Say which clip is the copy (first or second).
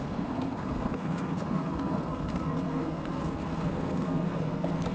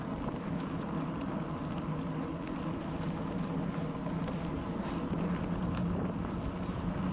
first